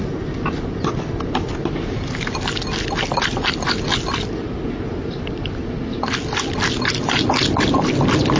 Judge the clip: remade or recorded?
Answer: recorded